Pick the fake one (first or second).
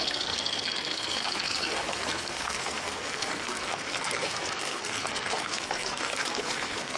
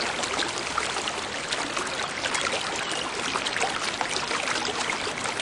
first